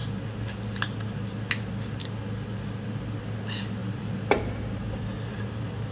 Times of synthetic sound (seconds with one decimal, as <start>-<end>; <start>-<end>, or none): 3.8-4.4; 5.3-5.9